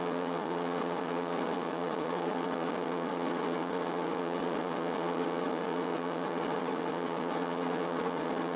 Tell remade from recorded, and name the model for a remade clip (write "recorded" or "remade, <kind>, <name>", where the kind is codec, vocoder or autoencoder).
remade, vocoder, Vocos